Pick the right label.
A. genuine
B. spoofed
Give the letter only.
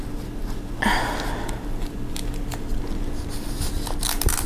A